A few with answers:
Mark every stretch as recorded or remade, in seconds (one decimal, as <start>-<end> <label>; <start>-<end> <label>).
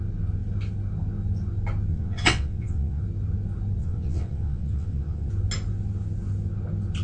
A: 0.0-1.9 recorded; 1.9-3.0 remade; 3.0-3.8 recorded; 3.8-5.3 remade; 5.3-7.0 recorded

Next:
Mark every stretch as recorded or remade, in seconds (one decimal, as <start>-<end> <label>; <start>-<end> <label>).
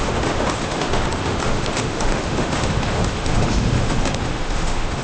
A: 0.0-5.0 remade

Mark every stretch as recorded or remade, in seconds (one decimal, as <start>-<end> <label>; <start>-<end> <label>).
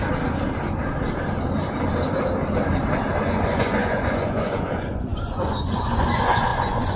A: 0.0-3.2 recorded; 3.2-7.0 remade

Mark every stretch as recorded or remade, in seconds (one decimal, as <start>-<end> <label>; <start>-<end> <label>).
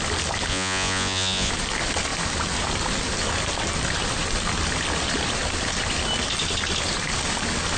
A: 0.0-0.5 recorded; 0.5-1.5 remade; 1.5-7.8 recorded